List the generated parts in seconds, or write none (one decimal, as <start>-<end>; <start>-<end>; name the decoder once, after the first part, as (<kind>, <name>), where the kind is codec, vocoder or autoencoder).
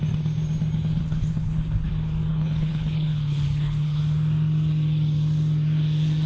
1.0-1.9 (codec, HILCodec); 2.3-4.0